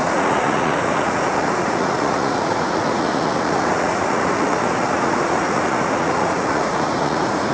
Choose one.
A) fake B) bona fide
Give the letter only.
A